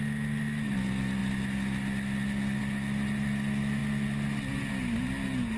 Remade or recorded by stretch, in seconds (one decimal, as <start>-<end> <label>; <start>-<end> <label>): 0.0-5.6 recorded